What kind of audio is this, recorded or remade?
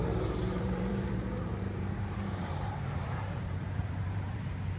remade